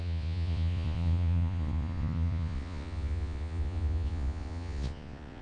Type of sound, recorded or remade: remade